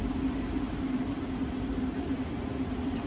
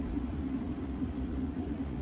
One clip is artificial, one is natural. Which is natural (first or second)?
first